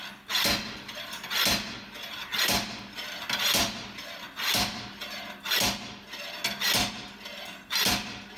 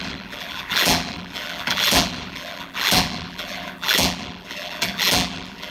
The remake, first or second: second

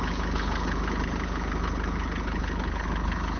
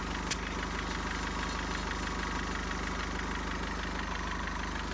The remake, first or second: first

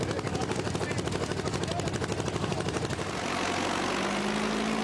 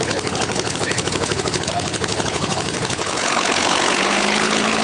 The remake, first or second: second